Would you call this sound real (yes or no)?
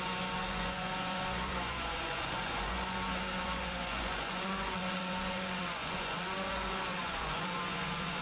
no